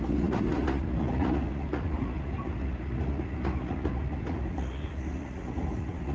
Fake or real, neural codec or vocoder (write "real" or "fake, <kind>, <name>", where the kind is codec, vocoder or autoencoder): fake, vocoder, Vocos